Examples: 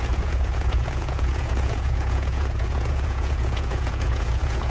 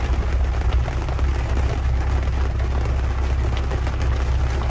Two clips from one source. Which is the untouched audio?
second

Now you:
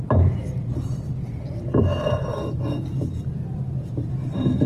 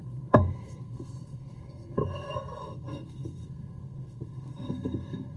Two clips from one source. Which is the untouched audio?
first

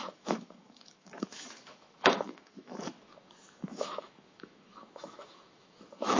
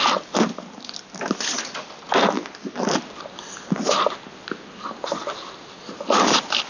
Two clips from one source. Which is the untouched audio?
second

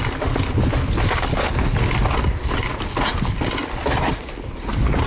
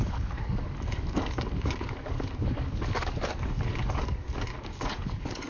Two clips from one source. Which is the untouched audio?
first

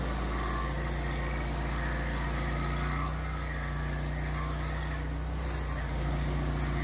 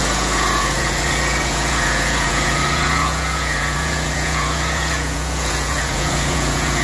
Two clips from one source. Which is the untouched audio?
first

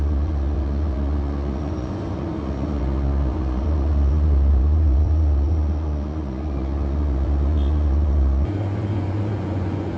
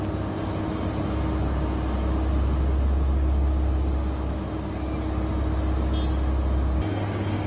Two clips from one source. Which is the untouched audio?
second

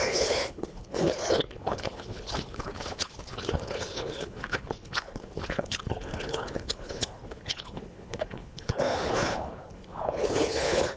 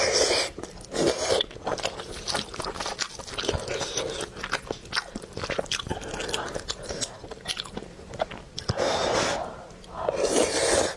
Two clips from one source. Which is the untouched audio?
second